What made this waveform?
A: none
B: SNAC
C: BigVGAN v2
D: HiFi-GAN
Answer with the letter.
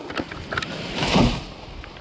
A